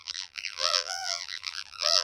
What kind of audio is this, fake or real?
fake